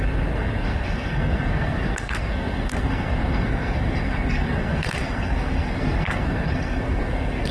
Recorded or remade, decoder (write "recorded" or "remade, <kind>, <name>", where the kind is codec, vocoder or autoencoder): remade, codec, SNAC